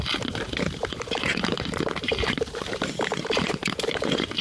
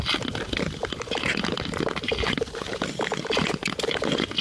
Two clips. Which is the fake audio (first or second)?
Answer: first